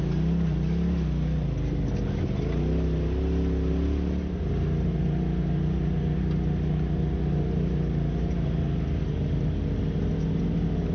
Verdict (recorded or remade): recorded